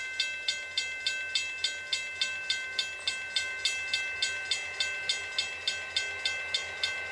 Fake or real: real